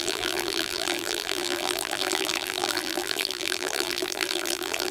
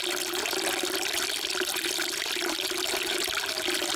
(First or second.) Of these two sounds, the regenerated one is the first